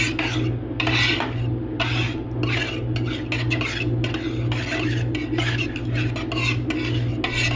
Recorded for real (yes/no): yes